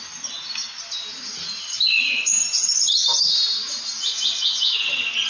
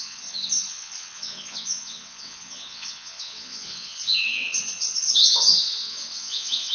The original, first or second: first